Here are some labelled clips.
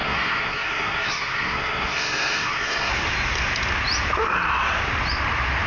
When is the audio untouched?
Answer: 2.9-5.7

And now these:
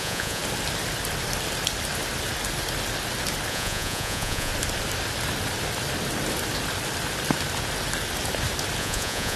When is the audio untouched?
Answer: 0.4-3.5; 4.5-8.8

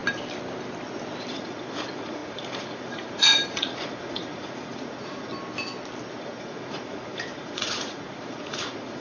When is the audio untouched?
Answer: 0.0-1.3; 5.3-6.2

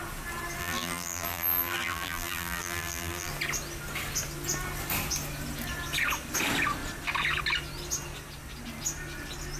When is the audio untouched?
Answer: 0.0-0.6; 3.3-9.6

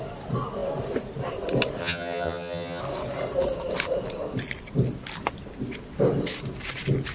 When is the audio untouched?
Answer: 0.0-1.8; 2.8-7.1